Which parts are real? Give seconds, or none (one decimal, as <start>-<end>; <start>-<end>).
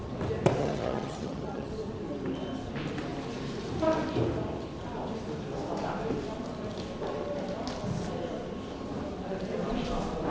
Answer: 0.0-0.6; 1.7-10.3